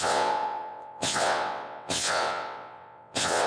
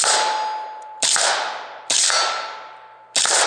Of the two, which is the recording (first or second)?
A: second